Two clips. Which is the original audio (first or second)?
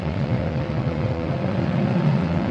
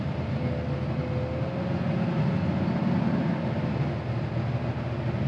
second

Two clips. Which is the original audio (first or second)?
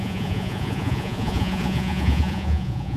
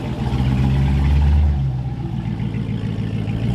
second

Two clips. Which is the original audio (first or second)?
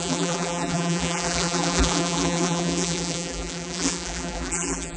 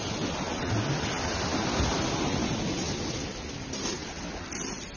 second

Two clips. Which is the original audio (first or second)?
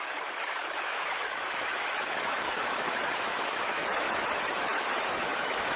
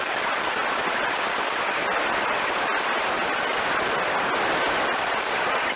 second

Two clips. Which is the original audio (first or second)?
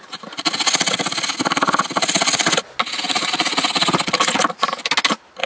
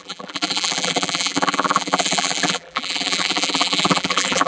first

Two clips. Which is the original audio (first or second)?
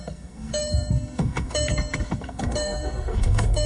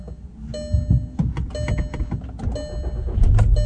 second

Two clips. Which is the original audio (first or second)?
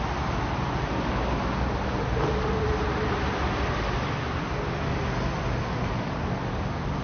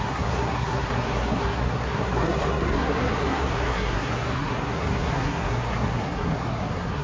first